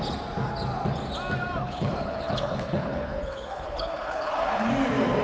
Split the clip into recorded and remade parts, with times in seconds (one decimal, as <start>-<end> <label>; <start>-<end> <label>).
0.0-1.6 recorded; 1.6-4.7 remade; 4.7-5.2 recorded